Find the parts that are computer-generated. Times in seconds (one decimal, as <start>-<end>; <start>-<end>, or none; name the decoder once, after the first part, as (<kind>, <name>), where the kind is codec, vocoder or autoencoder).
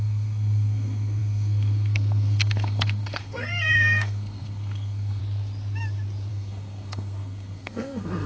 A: 0.0-5.2 (codec, SNAC); 6.3-8.3